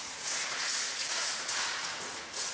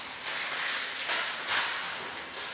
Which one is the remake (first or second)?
first